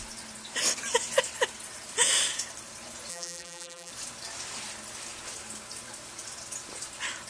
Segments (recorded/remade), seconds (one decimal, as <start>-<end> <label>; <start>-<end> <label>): 0.0-3.1 recorded; 3.1-3.9 remade; 3.9-7.3 recorded